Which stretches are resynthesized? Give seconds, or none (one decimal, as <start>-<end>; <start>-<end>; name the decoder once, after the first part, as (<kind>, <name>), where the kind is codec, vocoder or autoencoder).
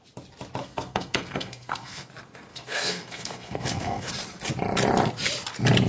0.6-2.1 (codec, SNAC); 2.5-4.1